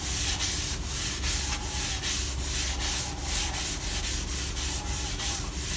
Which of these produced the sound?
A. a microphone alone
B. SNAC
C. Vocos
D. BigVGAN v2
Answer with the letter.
A